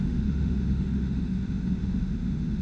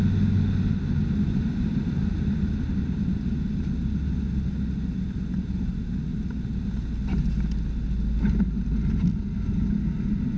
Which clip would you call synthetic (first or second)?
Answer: first